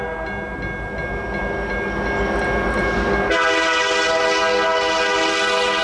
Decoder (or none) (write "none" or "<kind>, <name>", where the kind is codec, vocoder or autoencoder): none